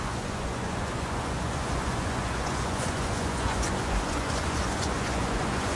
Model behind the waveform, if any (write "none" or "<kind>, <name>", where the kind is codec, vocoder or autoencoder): vocoder, Vocos